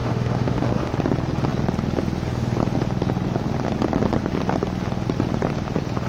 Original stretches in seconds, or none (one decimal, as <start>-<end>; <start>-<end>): 0.9-6.1